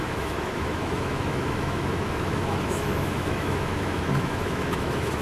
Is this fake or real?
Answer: fake